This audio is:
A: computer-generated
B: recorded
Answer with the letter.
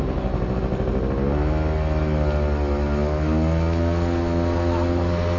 B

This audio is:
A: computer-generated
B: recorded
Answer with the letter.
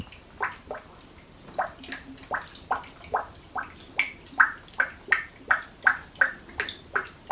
B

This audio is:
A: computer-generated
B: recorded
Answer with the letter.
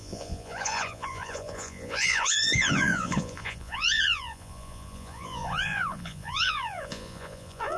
A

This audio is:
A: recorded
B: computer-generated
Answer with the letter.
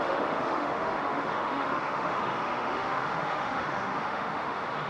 B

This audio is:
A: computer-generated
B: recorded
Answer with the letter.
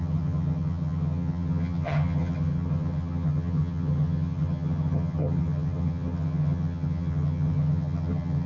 A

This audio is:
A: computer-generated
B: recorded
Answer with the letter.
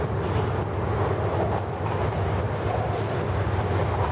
B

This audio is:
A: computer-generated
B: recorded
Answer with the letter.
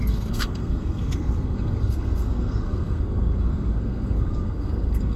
A